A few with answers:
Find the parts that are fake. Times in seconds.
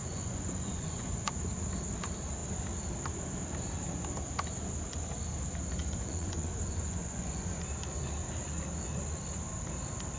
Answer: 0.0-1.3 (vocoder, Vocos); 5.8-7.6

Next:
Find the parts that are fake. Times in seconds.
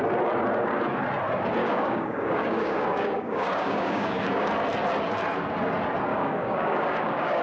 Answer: 1.6-4.5 (codec, DAC); 6.1-7.4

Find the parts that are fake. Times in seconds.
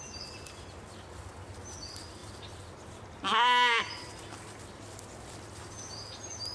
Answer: none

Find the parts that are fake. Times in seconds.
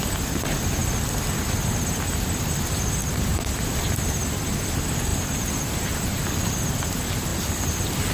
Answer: 3.0-3.5 (vocoder, BigVGAN v2); 5.1-6.5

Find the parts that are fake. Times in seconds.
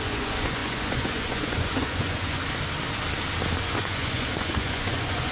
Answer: 0.0-2.4 (vocoder, Vocos); 3.6-5.3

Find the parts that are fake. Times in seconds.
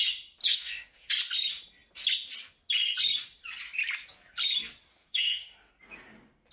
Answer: 0.4-1.1 (autoencoder, DAC-VAE); 4.9-5.7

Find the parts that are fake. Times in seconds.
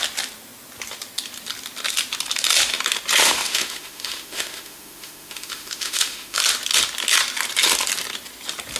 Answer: 3.2-6.4 (autoencoder, DAC-VAE)